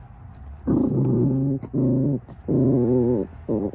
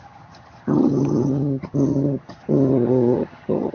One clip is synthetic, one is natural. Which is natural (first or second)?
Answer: first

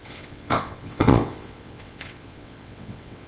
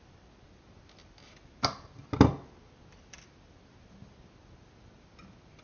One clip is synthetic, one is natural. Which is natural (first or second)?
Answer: second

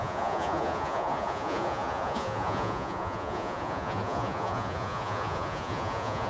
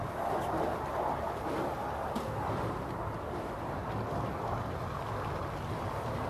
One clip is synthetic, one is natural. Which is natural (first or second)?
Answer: second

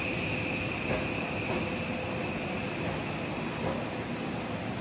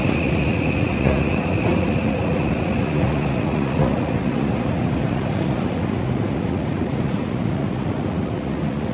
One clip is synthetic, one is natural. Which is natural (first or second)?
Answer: first